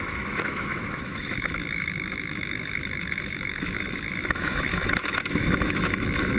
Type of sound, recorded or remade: remade